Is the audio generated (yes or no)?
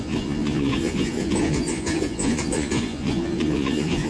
yes